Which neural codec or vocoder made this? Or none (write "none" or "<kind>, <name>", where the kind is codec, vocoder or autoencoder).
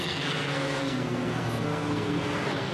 codec, SNAC